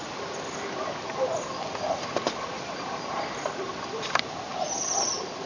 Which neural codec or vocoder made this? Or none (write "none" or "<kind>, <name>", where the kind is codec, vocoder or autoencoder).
none